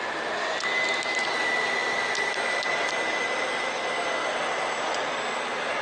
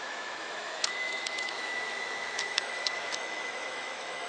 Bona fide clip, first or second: first